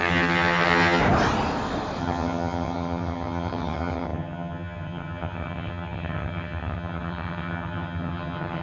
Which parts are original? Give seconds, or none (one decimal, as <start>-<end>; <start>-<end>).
1.0-2.0